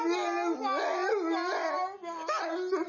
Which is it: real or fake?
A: real